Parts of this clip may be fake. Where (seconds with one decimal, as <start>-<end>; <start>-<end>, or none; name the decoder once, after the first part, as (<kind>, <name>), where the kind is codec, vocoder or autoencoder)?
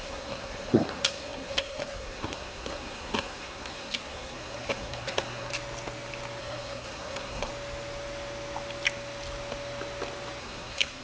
0.0-5.5 (codec, SNAC); 6.4-7.5; 10.4-11.0